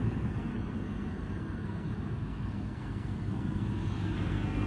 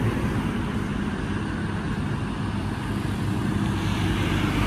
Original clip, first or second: second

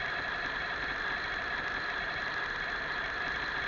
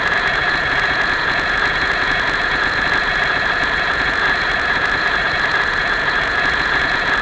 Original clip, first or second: first